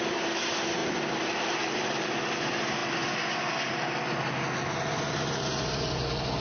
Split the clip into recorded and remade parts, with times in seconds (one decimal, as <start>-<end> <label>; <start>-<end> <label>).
0.0-0.8 recorded; 0.8-2.1 remade; 2.1-6.4 recorded